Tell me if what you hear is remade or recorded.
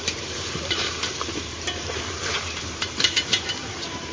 remade